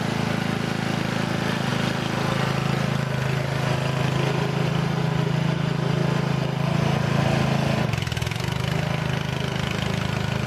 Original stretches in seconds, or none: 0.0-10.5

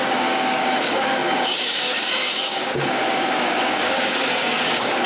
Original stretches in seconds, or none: none